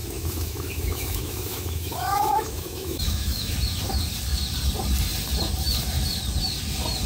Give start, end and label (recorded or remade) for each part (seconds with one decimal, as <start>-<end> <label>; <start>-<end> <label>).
0.0-3.5 remade; 3.5-7.1 recorded